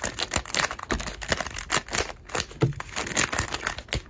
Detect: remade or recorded recorded